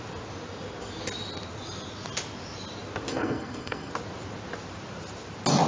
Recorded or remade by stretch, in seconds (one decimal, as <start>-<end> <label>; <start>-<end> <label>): 0.0-3.1 recorded; 3.1-3.9 remade; 3.9-5.7 recorded